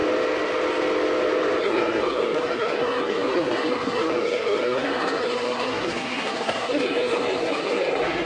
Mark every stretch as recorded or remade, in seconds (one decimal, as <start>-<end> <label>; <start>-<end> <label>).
0.0-1.6 recorded; 1.6-8.3 remade